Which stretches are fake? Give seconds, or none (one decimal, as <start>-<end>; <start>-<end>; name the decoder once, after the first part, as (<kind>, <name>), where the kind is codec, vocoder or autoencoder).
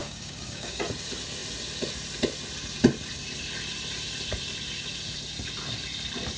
0.0-0.8 (codec, DAC)